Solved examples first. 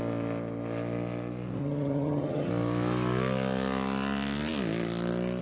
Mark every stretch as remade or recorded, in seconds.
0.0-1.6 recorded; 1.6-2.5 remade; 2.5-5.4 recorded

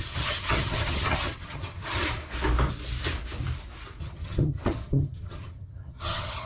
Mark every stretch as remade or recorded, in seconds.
0.0-2.2 remade; 2.2-4.0 recorded; 4.0-6.5 remade

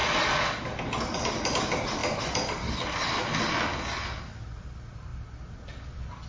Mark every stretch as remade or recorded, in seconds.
0.0-6.3 recorded

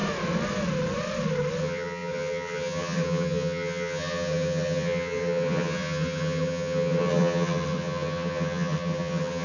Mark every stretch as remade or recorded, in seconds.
0.0-1.6 recorded; 1.6-9.4 remade

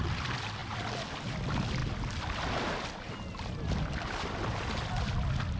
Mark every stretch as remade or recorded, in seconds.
0.0-5.6 recorded

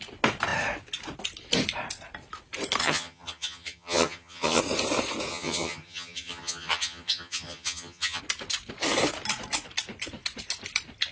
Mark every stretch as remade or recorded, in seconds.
0.0-2.8 recorded; 2.8-4.6 remade; 4.6-5.3 recorded; 5.3-8.2 remade; 8.2-11.1 recorded

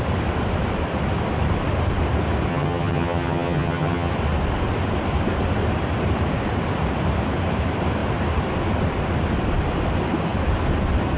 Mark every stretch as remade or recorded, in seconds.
0.0-2.5 recorded; 2.5-4.1 remade; 4.1-11.2 recorded